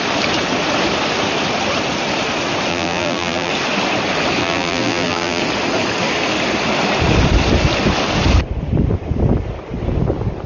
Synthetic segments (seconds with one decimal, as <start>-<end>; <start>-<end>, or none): 2.7-3.5; 4.4-5.4